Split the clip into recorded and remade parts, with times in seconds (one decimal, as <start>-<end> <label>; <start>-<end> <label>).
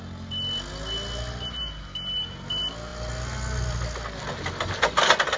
0.0-5.4 recorded